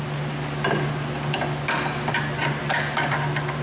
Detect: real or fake real